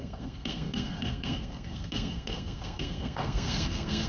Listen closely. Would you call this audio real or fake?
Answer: fake